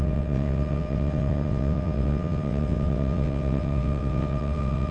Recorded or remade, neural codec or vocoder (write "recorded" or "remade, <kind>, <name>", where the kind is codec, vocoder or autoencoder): remade, vocoder, WaveNeXt